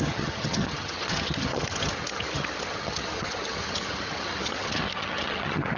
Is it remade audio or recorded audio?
remade